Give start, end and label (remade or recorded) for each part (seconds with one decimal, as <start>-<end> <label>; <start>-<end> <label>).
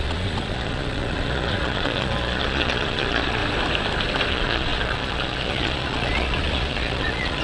0.0-3.4 remade; 3.4-4.3 recorded; 4.3-7.4 remade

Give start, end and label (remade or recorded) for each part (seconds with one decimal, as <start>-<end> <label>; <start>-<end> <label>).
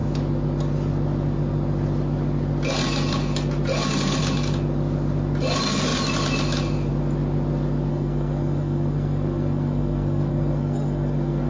0.0-7.9 recorded; 7.9-11.5 remade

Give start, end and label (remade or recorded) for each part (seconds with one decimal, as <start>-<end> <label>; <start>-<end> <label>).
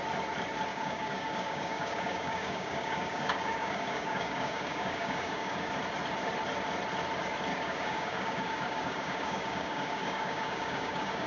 0.0-0.7 recorded; 0.7-5.7 remade; 5.7-7.5 recorded; 7.5-11.3 remade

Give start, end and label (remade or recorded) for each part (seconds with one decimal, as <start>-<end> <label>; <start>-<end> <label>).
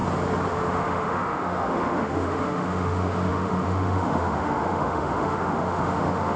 0.0-0.5 recorded; 0.5-6.4 remade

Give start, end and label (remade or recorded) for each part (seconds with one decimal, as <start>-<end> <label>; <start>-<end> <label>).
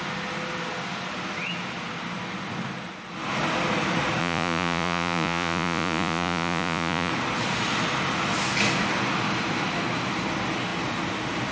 0.0-4.2 recorded; 4.2-7.1 remade; 7.1-11.5 recorded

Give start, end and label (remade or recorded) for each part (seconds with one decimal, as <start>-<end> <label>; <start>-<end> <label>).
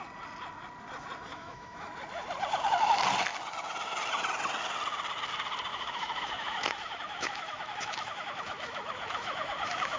0.0-1.3 recorded; 1.3-1.9 remade; 1.9-5.7 recorded; 5.7-10.0 remade